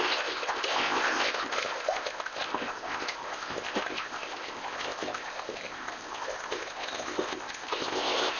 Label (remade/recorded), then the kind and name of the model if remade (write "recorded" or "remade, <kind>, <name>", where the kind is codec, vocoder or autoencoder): remade, codec, ZipCodec